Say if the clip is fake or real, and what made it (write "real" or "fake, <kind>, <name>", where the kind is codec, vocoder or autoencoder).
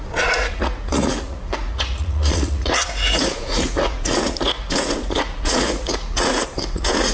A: fake, vocoder, Vocos